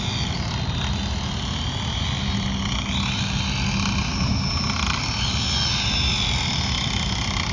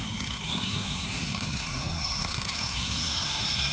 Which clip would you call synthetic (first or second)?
second